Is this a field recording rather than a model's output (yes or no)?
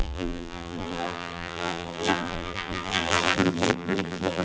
no